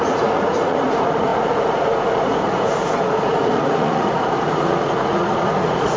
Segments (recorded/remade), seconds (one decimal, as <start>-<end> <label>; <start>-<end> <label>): 0.0-6.0 remade